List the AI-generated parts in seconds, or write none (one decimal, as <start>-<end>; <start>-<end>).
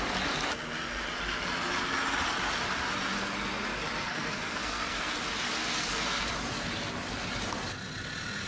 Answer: 4.1-5.1; 5.6-6.3